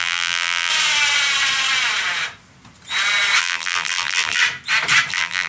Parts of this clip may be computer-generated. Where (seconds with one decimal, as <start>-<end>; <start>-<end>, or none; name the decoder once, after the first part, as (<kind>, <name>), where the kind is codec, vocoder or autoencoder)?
0.0-0.7 (vocoder, BigVGAN v2); 3.4-4.4; 5.1-5.5